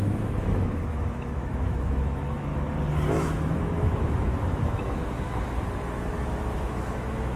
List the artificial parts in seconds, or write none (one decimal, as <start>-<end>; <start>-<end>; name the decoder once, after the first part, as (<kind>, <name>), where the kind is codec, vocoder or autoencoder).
0.0-2.5 (autoencoder, DAC-VAE); 3.1-5.0; 6.1-7.4